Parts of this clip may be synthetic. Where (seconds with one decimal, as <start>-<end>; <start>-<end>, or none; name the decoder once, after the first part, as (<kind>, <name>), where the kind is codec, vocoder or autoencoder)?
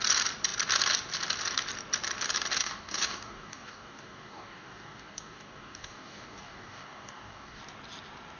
2.6-7.6 (codec, DAC)